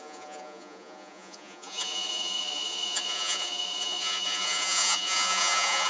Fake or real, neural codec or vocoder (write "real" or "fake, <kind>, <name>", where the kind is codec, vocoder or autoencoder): fake, vocoder, Vocos